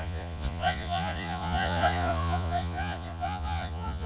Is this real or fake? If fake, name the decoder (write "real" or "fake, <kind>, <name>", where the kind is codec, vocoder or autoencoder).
fake, vocoder, Vocos